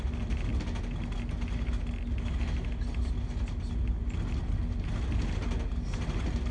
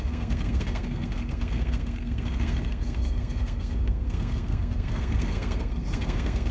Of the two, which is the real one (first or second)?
first